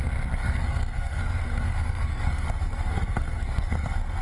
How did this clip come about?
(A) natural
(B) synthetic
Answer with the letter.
B